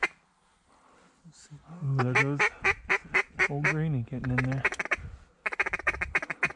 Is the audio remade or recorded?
recorded